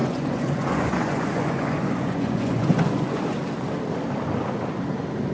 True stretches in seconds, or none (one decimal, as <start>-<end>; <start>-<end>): 3.2-5.3